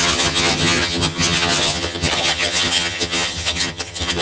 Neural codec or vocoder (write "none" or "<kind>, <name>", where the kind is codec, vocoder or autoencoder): vocoder, HiFi-GAN